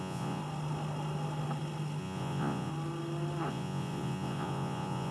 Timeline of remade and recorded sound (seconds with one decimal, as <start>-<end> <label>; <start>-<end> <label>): 0.0-0.4 remade; 0.4-2.0 recorded; 2.0-2.7 remade; 2.7-3.5 recorded; 3.5-5.1 remade

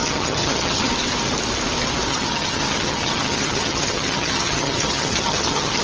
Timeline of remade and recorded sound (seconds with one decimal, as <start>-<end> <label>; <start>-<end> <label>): 0.0-0.9 remade; 0.9-2.1 recorded; 2.1-5.8 remade

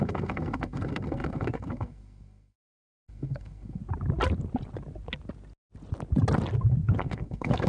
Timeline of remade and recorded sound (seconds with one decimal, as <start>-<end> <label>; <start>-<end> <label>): 0.0-3.8 remade; 3.8-7.0 recorded; 7.0-7.7 remade

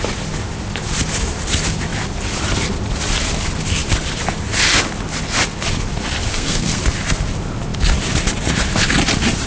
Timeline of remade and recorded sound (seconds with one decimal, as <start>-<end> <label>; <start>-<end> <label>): 0.0-6.3 recorded; 6.3-6.8 remade; 6.8-9.5 recorded